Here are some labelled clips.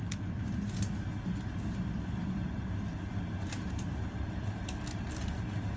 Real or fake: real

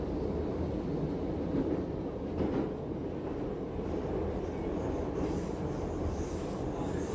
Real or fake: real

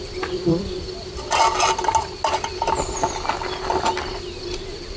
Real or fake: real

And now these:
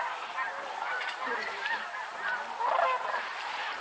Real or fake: real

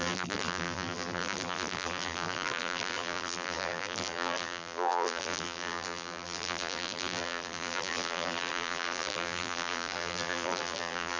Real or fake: fake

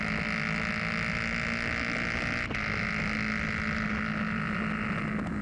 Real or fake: real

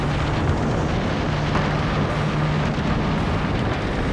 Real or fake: real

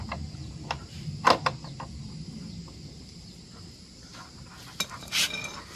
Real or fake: real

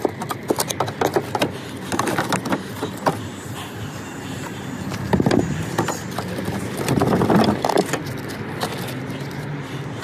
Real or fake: real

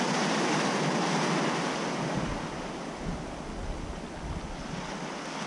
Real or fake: real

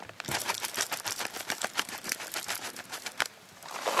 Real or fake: fake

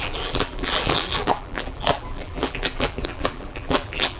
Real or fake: fake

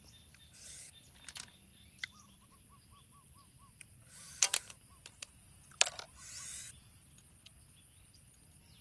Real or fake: fake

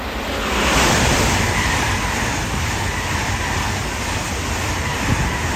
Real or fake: real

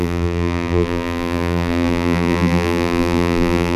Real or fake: fake